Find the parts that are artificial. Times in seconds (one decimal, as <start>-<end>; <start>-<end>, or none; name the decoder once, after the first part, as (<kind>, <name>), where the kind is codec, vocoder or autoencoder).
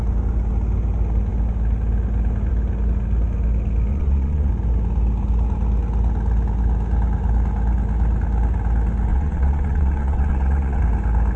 3.9-4.5 (vocoder, WaveNeXt); 9.1-10.8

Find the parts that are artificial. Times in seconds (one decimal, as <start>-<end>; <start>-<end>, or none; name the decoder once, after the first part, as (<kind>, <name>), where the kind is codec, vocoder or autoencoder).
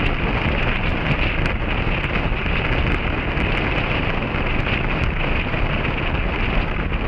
none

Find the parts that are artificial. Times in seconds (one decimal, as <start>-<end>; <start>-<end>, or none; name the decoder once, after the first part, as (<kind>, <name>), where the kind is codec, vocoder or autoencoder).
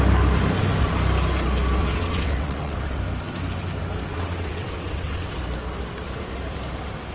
1.8-3.0 (vocoder, WaveNeXt); 4.1-5.4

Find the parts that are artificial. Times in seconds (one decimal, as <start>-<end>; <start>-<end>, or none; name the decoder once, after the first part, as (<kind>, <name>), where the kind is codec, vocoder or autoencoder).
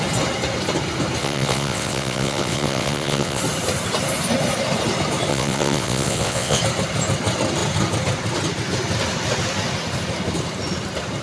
1.2-3.4 (vocoder, WaveNeXt); 5.3-6.6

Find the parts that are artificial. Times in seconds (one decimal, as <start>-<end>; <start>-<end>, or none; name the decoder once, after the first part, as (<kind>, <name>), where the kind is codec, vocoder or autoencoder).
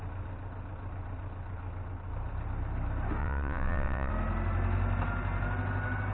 3.2-4.1 (vocoder, WaveNeXt)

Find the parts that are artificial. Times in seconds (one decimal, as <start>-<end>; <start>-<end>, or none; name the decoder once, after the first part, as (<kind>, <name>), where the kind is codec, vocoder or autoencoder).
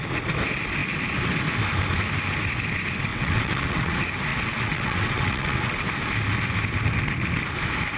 3.1-3.9 (vocoder, WaveNeXt); 4.3-5.8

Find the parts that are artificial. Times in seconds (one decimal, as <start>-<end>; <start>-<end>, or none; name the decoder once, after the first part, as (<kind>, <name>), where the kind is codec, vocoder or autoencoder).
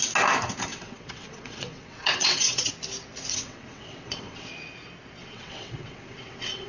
0.7-2.7 (vocoder, WaveNeXt); 3.3-4.5; 5.2-6.7